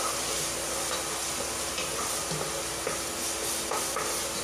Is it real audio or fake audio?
real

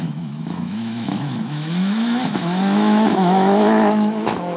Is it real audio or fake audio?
fake